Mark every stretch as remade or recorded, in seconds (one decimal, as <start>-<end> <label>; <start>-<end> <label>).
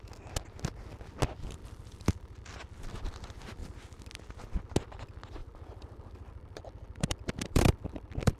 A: 0.0-1.6 recorded; 1.6-2.4 remade; 2.4-5.4 recorded; 5.4-8.4 remade